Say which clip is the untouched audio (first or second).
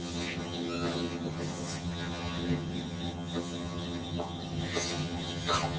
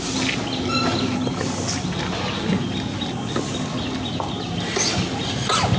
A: second